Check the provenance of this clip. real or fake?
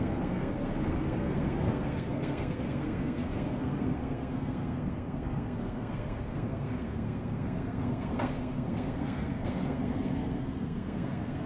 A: fake